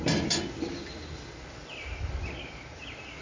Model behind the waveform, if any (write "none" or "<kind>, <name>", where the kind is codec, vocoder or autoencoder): none